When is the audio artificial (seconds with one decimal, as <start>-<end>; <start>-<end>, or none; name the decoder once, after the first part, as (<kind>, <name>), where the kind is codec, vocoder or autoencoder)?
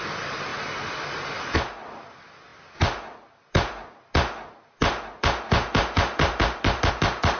none